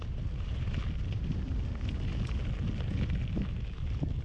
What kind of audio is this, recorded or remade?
recorded